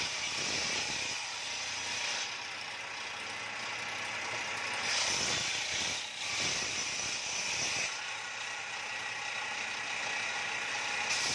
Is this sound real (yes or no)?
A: yes